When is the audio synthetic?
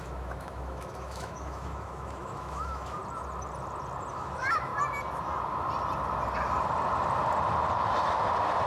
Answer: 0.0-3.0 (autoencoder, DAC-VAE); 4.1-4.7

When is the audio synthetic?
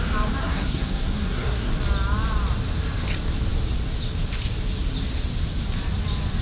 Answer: 0.4-1.7 (codec, SNAC)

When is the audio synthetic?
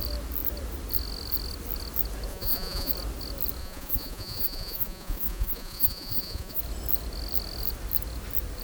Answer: 2.3-2.9 (vocoder, Vocos); 3.6-6.6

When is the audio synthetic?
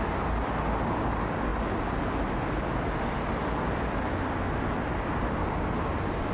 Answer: none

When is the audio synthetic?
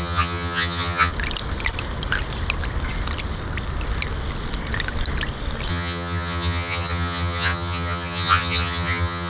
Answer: 0.0-1.1 (vocoder, HiFi-GAN); 5.7-9.3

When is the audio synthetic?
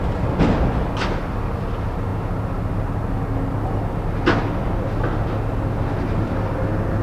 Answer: none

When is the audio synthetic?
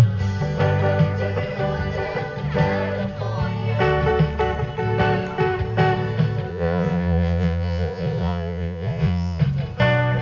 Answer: 6.5-9.4 (vocoder, Vocos)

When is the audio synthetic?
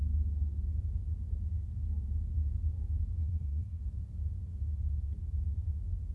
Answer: 3.2-3.8 (codec, SNAC)